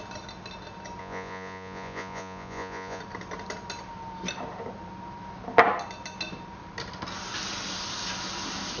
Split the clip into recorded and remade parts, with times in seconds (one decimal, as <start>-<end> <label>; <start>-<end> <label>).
0.0-1.0 recorded; 1.0-3.0 remade; 3.0-8.8 recorded